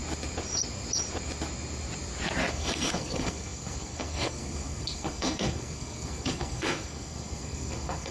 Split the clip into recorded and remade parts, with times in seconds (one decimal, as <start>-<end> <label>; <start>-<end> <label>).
0.0-2.5 recorded; 2.5-8.1 remade